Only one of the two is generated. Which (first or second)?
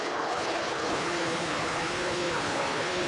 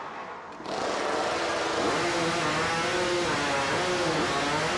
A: first